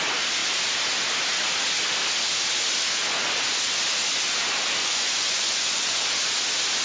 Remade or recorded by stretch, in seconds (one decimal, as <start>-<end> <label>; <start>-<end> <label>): 0.0-4.8 recorded; 4.8-6.0 remade; 6.0-6.8 recorded